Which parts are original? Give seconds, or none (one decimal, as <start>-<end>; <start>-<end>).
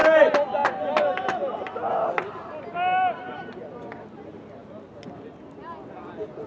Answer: 0.0-6.5